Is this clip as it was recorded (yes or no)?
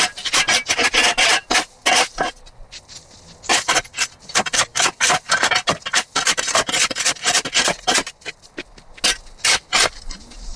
yes